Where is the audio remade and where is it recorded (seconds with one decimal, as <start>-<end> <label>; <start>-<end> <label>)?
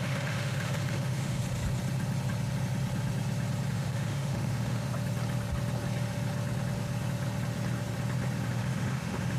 0.0-1.4 remade; 1.4-3.7 recorded; 3.7-4.9 remade; 4.9-8.5 recorded; 8.5-9.4 remade